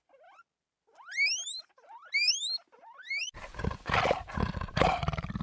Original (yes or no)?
yes